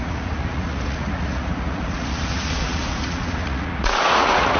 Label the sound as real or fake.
fake